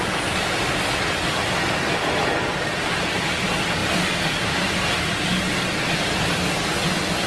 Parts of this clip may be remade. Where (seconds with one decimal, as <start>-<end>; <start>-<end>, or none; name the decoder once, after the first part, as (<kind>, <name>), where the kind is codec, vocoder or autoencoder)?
none